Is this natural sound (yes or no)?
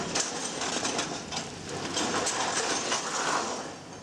yes